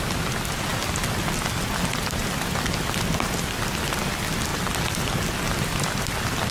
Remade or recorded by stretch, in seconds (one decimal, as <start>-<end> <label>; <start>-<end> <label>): 0.0-6.5 recorded